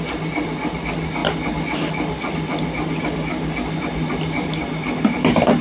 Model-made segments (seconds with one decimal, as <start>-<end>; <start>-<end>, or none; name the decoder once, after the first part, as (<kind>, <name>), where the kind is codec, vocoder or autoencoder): none